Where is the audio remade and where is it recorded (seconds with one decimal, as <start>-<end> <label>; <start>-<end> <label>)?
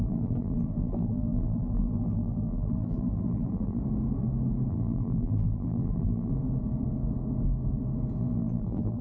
0.0-3.8 remade; 3.8-4.7 recorded; 4.7-6.3 remade; 6.3-8.2 recorded; 8.2-9.0 remade